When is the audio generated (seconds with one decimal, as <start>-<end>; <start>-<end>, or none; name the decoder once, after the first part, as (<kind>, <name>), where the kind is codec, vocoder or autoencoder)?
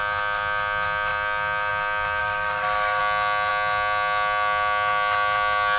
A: 2.2-3.0 (codec, DAC)